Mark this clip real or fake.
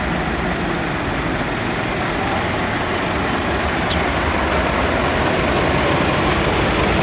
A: real